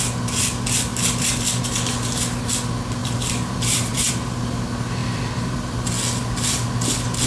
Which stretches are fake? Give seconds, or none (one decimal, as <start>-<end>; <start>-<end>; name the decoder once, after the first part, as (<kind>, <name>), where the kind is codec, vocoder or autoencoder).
0.9-1.6 (vocoder, BigVGAN v2); 3.0-4.1; 5.0-5.9